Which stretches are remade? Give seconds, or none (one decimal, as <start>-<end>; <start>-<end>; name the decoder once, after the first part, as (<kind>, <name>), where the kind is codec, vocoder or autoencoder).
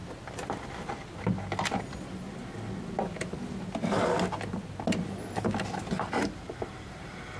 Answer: none